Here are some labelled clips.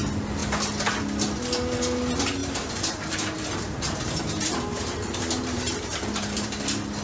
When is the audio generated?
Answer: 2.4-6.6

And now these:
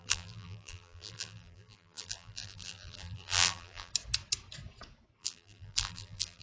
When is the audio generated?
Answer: 0.0-3.9; 5.2-6.4

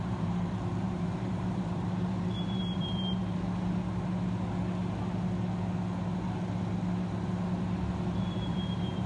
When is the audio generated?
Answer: 0.0-3.2; 8.2-9.1

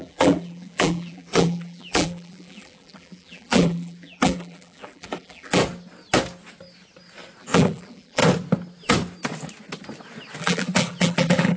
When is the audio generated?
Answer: 0.0-5.6; 7.4-8.2; 10.4-11.6

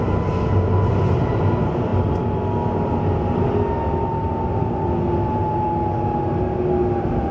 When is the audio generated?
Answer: none

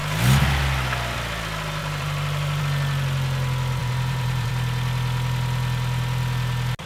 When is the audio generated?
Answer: 1.8-2.6; 3.8-4.5